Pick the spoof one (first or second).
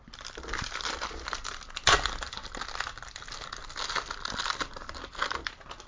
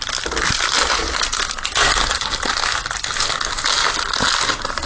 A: first